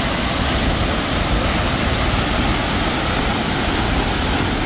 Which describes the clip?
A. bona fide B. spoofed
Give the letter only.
A